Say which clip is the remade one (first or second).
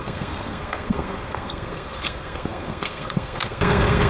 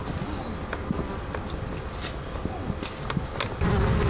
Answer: first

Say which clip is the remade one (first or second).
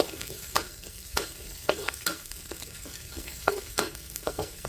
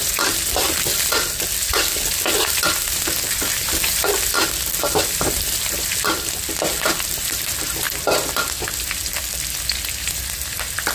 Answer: first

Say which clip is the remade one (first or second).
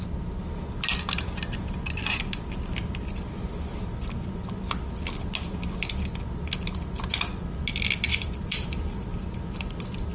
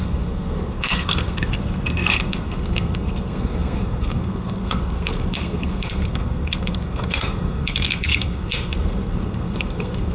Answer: second